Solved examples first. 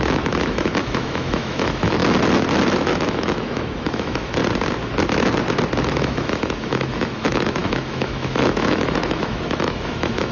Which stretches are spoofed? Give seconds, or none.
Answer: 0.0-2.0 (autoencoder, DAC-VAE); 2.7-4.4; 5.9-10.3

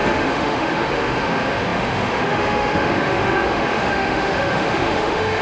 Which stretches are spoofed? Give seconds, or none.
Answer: 0.0-5.4 (autoencoder, DAC-VAE)

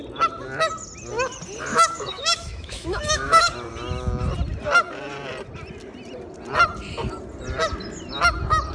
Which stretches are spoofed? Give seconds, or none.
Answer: 1.7-3.5 (autoencoder, DAC-VAE)

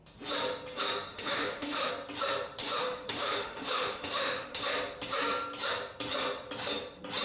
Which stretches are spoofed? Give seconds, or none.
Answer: 1.1-1.9 (autoencoder, DAC-VAE); 2.6-4.6